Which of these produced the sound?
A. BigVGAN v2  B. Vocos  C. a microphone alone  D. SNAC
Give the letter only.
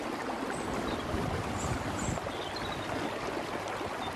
C